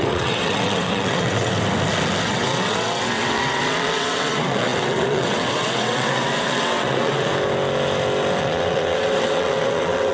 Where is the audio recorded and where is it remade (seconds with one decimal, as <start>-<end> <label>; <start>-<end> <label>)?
0.0-1.5 remade; 1.5-2.2 recorded; 2.2-7.3 remade; 7.3-8.4 recorded; 8.4-10.1 remade